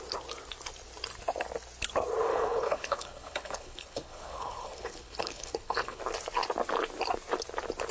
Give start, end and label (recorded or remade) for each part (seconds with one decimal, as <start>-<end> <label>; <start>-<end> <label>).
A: 0.0-2.3 recorded; 2.3-6.0 remade; 6.0-7.9 recorded

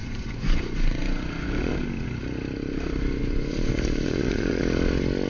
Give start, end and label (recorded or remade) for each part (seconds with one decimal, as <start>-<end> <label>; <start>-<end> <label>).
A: 0.0-1.7 remade; 1.7-3.2 recorded; 3.2-4.6 remade; 4.6-5.3 recorded

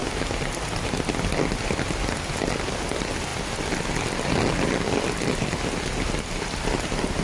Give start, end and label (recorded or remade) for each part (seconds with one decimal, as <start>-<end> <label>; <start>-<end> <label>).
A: 0.0-7.2 recorded

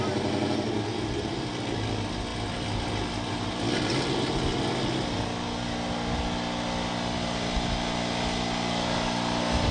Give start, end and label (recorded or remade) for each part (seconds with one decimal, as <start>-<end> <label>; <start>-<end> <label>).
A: 0.0-9.7 recorded

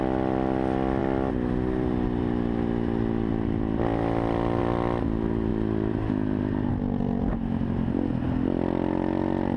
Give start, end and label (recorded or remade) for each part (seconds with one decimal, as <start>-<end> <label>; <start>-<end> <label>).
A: 0.0-1.0 recorded; 1.0-4.6 remade; 4.6-5.5 recorded; 5.5-6.7 remade; 6.7-9.6 recorded

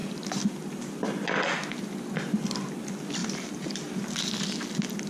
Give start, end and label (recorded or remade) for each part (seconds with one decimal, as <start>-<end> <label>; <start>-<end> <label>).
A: 0.0-3.2 recorded; 3.2-3.8 remade; 3.8-5.1 recorded

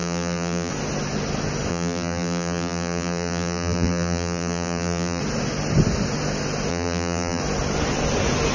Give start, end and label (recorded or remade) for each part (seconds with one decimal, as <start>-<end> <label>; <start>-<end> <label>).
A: 0.0-0.7 remade; 0.7-1.7 recorded; 1.7-5.2 remade; 5.2-6.7 recorded; 6.7-7.4 remade; 7.4-8.5 recorded

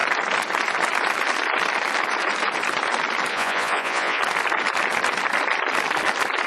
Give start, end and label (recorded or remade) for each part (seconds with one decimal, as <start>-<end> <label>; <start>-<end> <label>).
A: 0.0-3.3 recorded; 3.3-4.2 remade; 4.2-6.5 recorded